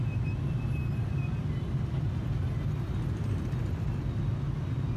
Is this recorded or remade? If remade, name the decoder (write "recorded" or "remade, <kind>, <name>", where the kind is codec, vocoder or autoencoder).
recorded